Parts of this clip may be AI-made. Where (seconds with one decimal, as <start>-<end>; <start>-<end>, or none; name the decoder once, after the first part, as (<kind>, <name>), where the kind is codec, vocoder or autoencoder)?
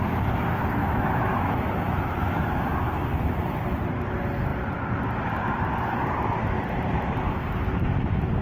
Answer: 0.8-3.4 (autoencoder, DAC-VAE)